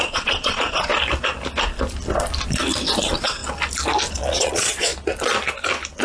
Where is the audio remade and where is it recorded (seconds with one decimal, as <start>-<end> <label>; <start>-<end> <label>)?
0.0-0.9 remade; 0.9-3.0 recorded; 3.0-3.4 remade; 3.4-4.1 recorded; 4.1-4.9 remade; 4.9-6.0 recorded